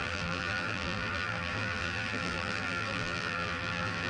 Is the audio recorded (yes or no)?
no